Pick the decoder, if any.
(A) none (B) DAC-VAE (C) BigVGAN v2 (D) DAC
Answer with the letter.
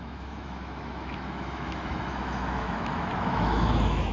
B